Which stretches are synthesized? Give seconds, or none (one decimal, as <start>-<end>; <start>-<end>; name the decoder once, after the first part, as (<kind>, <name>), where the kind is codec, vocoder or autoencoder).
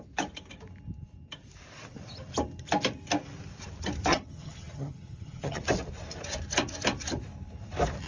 4.1-5.6 (vocoder, HiFi-GAN)